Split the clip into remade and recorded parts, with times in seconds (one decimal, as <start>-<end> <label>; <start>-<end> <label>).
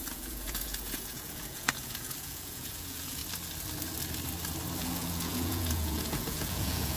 0.0-3.2 remade; 3.2-4.8 recorded; 4.8-7.0 remade